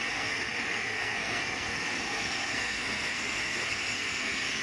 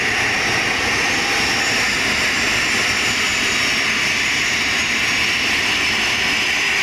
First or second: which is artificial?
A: first